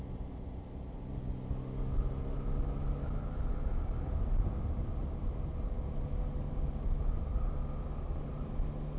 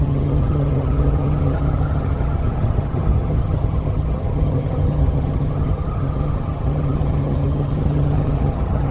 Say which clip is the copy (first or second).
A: second